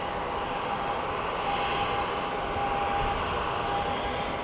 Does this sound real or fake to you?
real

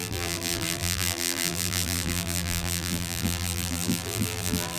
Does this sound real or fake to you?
fake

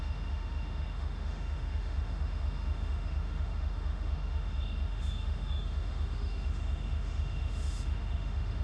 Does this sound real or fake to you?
fake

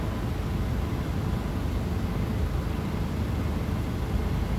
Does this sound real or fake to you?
real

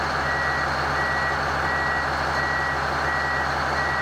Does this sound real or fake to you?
real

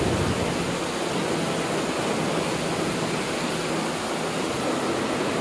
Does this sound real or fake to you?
real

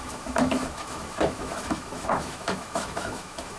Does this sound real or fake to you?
fake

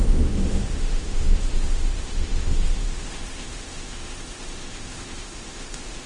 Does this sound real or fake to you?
fake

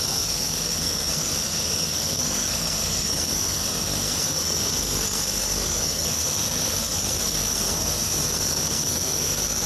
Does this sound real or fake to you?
fake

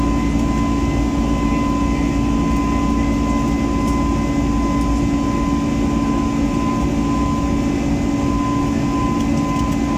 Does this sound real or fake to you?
real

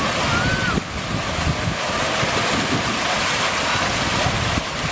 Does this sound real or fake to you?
real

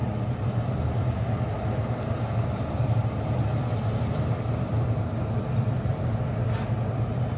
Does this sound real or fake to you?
real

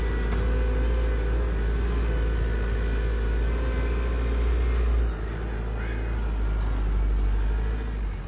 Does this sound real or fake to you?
real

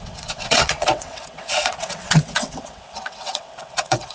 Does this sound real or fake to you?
fake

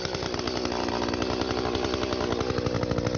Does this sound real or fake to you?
real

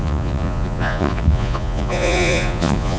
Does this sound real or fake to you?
fake